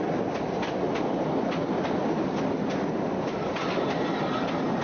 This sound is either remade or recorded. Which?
recorded